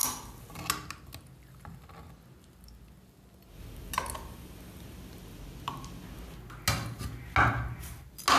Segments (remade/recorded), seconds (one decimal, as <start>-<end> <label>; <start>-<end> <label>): 0.0-8.4 recorded